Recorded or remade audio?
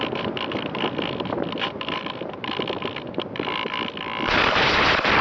recorded